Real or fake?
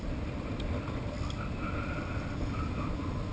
real